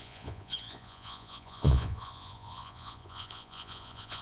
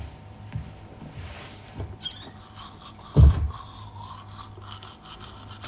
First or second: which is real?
second